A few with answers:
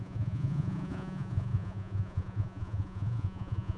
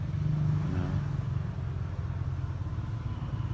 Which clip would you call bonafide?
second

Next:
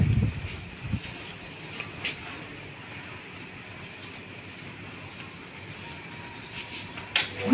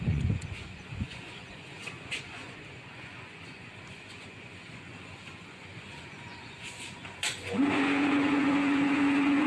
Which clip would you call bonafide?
first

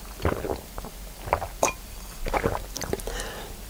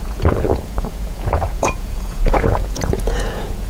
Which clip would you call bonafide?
first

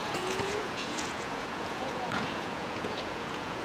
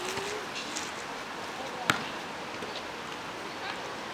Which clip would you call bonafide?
second